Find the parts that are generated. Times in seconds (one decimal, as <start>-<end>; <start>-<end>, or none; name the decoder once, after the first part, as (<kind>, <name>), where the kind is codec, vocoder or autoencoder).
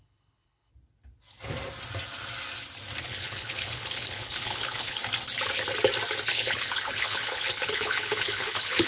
0.0-0.7 (codec, HILCodec); 3.0-5.0; 6.3-8.9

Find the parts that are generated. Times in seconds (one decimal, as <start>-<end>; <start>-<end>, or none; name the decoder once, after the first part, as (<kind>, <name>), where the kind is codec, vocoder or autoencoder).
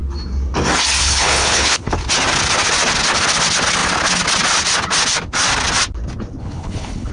1.0-1.9 (codec, HILCodec); 6.4-7.1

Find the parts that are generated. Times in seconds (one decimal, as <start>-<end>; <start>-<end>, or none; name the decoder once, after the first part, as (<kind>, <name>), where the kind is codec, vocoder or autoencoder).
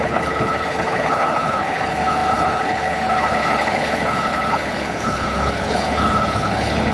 0.0-6.9 (codec, HILCodec)